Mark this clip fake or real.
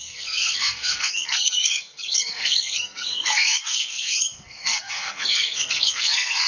fake